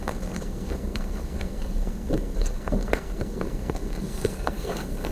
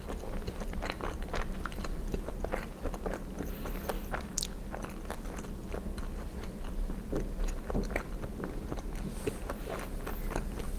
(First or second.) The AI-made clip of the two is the first